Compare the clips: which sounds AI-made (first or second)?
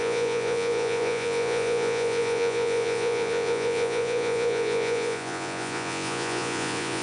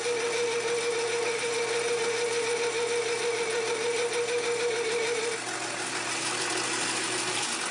first